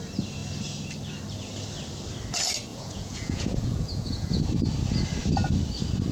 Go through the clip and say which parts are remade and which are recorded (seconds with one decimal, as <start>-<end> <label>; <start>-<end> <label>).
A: 0.0-2.7 recorded; 2.7-4.4 remade; 4.4-6.1 recorded